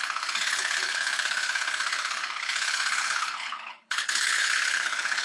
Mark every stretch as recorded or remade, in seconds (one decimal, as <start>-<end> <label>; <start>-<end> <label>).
0.0-5.2 remade

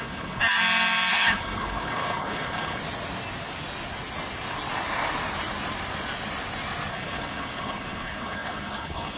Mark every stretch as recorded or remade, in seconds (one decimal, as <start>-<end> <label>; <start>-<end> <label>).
0.0-0.4 remade; 0.4-1.1 recorded; 1.1-2.8 remade; 2.8-6.9 recorded; 6.9-9.2 remade

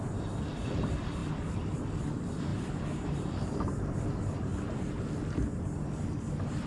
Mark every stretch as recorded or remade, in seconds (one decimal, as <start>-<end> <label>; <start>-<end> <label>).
0.0-6.7 recorded

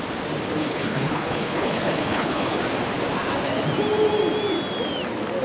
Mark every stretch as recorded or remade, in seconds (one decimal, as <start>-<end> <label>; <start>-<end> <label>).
0.0-0.6 recorded; 0.6-2.6 remade; 2.6-5.4 recorded

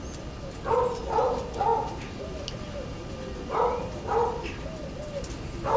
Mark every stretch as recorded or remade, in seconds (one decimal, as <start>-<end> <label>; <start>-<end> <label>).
0.0-5.8 recorded

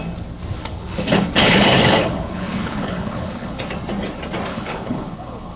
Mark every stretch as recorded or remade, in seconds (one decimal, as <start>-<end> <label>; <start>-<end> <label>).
0.0-0.6 recorded; 0.6-3.6 remade; 3.6-4.5 recorded; 4.5-5.6 remade